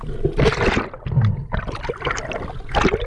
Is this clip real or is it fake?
real